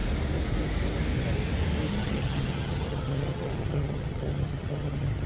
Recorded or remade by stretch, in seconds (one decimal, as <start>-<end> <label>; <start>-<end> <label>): 0.0-1.9 recorded; 1.9-5.3 remade